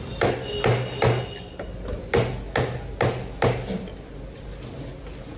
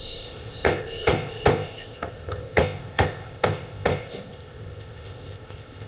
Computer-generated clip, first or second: second